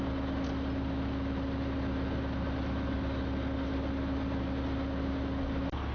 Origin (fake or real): real